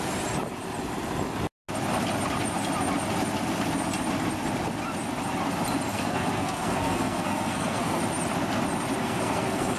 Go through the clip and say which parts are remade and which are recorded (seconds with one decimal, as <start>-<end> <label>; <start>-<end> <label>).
0.0-5.9 recorded; 5.9-8.0 remade; 8.0-9.0 recorded; 9.0-9.8 remade